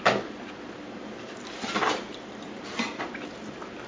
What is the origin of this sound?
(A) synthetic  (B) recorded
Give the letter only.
B